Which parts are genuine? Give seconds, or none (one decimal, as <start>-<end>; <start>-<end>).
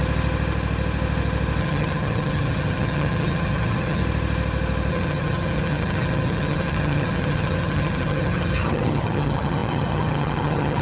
0.0-1.6; 4.0-4.9